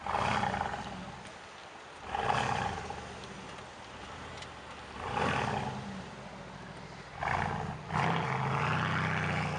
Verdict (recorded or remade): recorded